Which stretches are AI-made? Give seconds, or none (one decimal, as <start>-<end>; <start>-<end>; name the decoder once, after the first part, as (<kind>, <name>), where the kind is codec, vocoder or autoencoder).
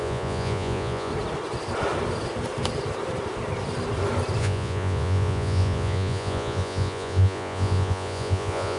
0.0-1.1 (vocoder, Vocos); 4.4-8.8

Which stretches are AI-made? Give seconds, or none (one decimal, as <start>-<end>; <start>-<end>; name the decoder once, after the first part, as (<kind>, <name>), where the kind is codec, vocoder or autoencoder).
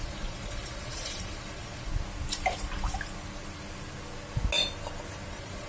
0.0-1.9 (vocoder, Vocos); 5.3-5.7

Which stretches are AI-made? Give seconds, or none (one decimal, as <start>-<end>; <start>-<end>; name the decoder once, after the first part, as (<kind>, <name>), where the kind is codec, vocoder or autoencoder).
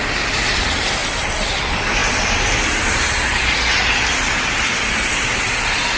none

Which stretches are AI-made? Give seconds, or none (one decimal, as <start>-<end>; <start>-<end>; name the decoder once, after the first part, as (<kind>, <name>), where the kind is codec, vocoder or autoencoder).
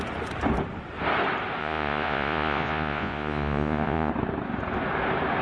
1.6-4.1 (vocoder, Vocos)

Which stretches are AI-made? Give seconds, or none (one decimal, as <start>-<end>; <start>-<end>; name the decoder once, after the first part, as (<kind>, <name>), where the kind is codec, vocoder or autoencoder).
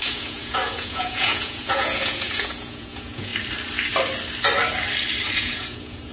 0.0-3.3 (vocoder, Vocos); 5.4-6.1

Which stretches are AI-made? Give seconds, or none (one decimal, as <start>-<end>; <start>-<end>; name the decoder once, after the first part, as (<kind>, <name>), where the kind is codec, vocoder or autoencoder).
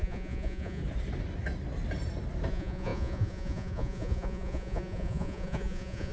0.0-0.8 (vocoder, Vocos); 2.5-6.1